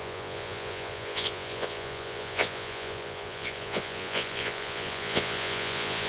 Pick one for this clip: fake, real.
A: fake